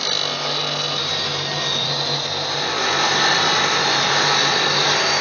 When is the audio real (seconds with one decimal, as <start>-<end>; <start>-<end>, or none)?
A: 0.0-5.2